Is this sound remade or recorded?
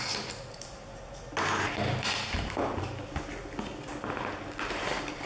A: recorded